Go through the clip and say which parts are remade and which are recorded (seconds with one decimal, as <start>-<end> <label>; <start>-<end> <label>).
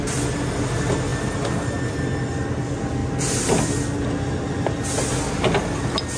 0.0-6.2 recorded